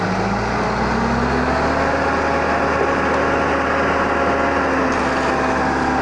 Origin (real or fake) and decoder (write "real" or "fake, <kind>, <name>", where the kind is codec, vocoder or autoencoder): real